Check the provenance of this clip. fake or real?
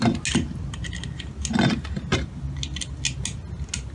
real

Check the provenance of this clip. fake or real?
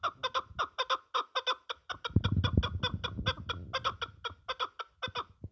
real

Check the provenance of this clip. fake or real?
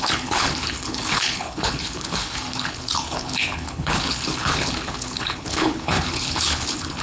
fake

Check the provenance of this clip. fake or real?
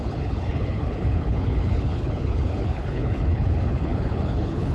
fake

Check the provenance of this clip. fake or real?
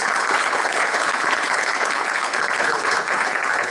fake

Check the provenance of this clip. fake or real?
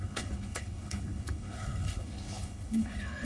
fake